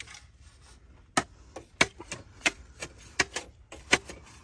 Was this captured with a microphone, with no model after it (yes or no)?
yes